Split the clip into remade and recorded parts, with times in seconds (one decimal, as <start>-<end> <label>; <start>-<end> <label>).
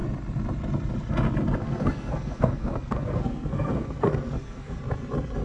0.0-1.6 recorded; 1.6-4.8 remade; 4.8-5.4 recorded